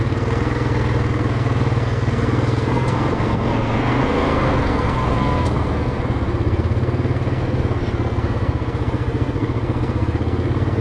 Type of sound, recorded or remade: remade